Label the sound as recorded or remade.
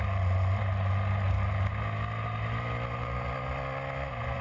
recorded